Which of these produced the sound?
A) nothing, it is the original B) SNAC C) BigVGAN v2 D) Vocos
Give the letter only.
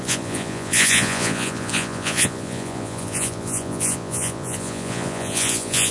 D